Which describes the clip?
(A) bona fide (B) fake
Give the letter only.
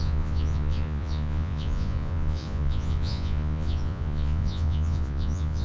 B